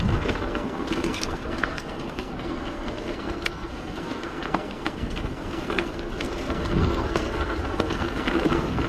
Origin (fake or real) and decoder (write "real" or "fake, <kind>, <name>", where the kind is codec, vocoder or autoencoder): fake, codec, SNAC